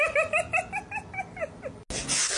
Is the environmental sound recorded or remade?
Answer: recorded